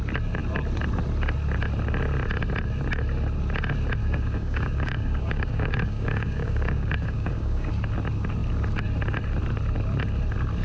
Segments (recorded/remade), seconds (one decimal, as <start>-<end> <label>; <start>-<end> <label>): 0.0-4.0 recorded; 4.0-7.7 remade; 7.7-10.6 recorded